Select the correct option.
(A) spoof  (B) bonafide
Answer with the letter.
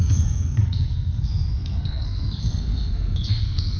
A